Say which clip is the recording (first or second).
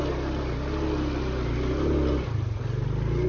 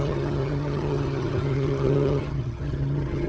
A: first